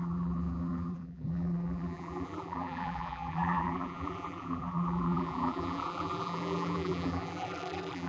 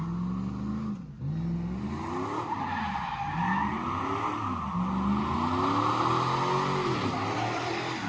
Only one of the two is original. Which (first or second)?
second